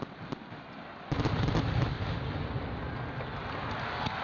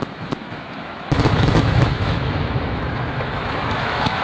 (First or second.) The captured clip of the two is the first